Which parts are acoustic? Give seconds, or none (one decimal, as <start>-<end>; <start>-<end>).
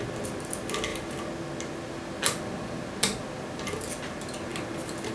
0.0-5.1